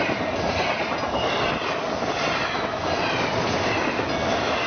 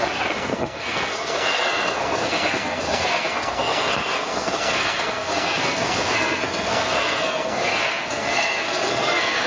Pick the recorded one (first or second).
first